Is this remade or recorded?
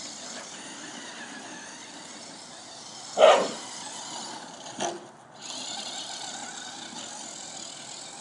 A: recorded